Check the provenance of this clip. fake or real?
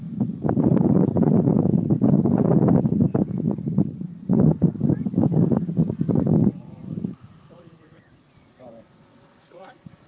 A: fake